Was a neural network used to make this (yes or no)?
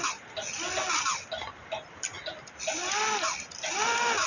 no